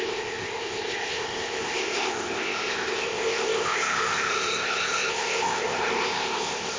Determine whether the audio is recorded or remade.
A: remade